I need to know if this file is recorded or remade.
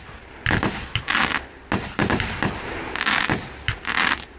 recorded